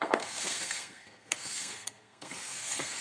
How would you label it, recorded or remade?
remade